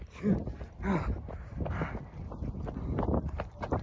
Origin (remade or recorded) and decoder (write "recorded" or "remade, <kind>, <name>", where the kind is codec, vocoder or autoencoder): recorded